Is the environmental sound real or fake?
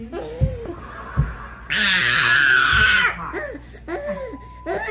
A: real